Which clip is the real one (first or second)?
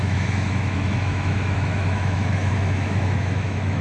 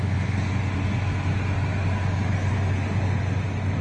second